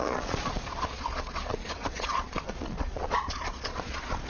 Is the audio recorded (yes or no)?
no